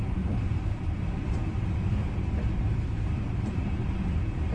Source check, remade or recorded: remade